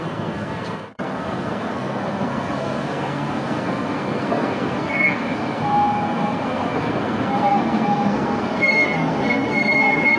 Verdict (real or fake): fake